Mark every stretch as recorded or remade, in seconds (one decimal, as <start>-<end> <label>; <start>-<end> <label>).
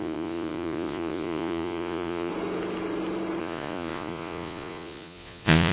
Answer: 0.0-2.3 remade; 2.3-3.4 recorded; 3.4-5.7 remade